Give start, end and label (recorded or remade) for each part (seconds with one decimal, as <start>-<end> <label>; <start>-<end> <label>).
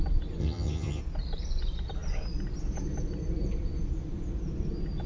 0.0-0.4 recorded; 0.4-1.0 remade; 1.0-5.1 recorded